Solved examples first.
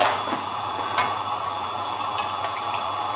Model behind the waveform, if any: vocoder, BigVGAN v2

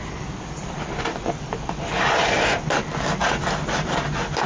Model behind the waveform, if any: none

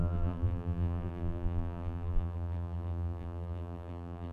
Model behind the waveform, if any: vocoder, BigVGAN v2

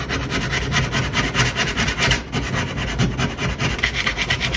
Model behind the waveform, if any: none